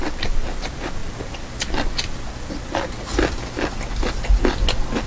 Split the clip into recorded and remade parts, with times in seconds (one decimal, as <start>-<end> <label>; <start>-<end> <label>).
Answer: 0.0-5.1 recorded